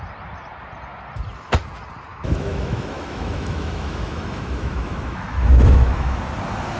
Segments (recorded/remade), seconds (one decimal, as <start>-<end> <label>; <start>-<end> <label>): 0.0-2.1 recorded; 2.1-6.2 remade; 6.2-6.8 recorded